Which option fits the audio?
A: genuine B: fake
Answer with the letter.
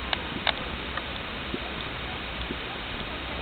A